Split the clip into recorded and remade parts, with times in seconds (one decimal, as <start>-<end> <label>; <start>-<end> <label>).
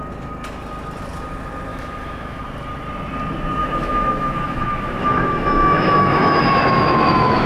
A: 0.0-1.7 recorded; 1.7-2.4 remade; 2.4-3.6 recorded; 3.6-7.5 remade